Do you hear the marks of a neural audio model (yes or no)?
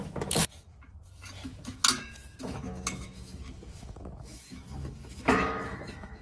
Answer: yes